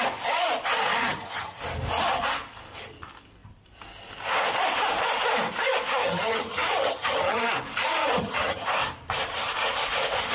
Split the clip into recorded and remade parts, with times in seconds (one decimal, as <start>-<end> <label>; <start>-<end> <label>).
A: 0.0-1.0 recorded; 1.0-1.6 remade; 1.6-6.0 recorded; 6.0-7.4 remade; 7.4-8.0 recorded; 8.0-8.7 remade; 8.7-10.3 recorded